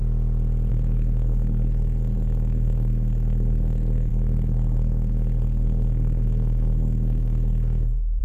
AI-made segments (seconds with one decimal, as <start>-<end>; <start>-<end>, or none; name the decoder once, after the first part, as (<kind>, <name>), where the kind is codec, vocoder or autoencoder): 0.7-8.2 (codec, SNAC)